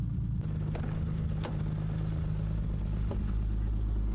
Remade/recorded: recorded